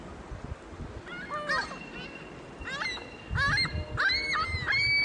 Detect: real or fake real